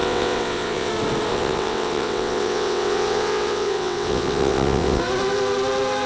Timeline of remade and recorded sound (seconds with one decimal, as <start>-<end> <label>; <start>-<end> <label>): 0.0-0.9 remade; 0.9-1.3 recorded; 1.3-5.0 remade; 5.0-6.1 recorded